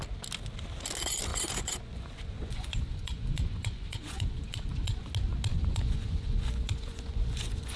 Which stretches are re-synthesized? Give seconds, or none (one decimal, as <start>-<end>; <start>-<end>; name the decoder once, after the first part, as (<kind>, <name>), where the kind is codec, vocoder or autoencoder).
1.3-5.1 (vocoder, Vocos); 5.5-7.8